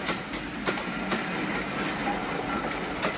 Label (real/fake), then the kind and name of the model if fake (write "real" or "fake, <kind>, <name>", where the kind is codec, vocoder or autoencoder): real